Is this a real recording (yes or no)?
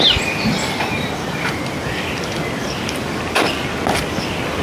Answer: yes